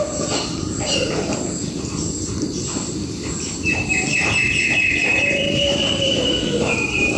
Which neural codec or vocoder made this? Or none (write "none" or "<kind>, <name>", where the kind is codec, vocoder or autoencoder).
vocoder, BigVGAN v2